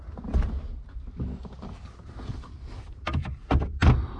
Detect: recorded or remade recorded